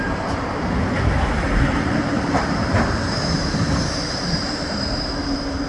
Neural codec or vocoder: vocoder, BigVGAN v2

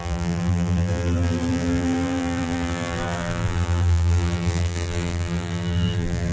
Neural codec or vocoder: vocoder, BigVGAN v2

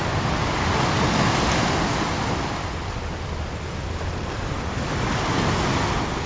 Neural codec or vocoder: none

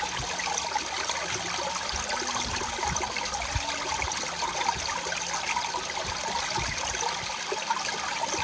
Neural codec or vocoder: none